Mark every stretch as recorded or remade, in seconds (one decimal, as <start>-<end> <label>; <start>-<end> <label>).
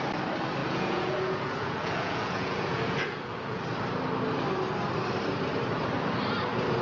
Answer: 0.0-0.6 recorded; 0.6-3.6 remade; 3.6-6.8 recorded